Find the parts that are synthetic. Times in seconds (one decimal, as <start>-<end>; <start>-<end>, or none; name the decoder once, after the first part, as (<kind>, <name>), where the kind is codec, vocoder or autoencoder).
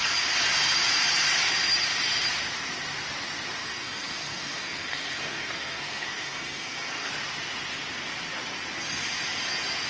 3.6-7.1 (codec, SNAC)